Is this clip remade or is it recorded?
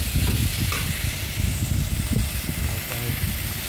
recorded